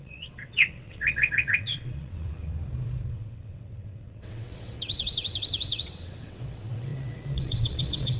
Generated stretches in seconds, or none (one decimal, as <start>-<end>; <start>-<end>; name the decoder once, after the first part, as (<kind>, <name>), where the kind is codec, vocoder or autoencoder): 0.0-2.5 (vocoder, WaveNeXt); 3.1-8.2